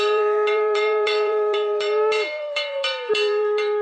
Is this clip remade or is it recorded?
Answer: remade